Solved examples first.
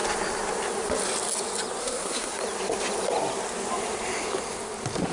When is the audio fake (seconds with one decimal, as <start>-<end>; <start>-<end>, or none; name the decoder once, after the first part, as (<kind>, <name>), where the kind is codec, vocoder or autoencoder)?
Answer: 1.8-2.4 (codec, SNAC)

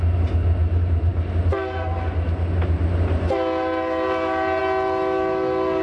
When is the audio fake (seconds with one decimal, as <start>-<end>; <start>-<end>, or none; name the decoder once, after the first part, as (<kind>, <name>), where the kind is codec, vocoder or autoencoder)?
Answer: none

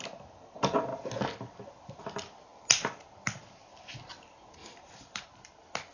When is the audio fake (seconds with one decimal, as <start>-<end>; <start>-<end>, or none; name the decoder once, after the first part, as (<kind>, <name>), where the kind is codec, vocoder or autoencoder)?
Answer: 4.6-5.2 (vocoder, BigVGAN v2)

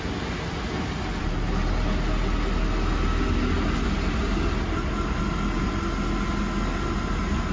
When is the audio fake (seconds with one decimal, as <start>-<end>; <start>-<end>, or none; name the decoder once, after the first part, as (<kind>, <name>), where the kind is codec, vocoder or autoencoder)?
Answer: 1.2-1.8 (vocoder, BigVGAN v2)

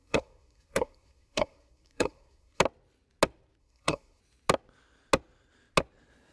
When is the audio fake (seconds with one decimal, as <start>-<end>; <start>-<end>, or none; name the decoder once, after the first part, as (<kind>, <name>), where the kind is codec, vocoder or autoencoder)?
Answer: 0.0-2.6 (codec, SNAC); 3.6-4.2

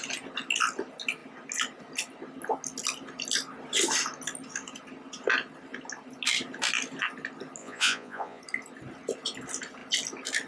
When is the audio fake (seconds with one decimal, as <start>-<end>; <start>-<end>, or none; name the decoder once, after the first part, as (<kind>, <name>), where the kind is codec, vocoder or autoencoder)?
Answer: 7.6-8.4 (vocoder, Vocos)

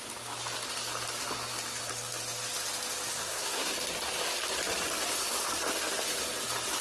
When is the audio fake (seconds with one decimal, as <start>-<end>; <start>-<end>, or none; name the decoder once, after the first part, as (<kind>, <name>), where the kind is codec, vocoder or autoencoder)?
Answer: 3.2-3.7 (codec, SNAC)

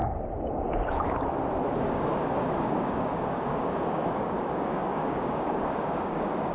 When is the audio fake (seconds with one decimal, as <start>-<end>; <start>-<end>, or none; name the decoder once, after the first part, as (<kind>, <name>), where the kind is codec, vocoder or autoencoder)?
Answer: 1.8-6.5 (codec, DAC)